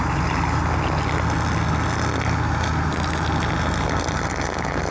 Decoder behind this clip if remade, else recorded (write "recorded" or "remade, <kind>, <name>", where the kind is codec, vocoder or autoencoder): recorded